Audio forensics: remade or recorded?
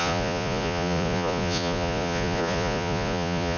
remade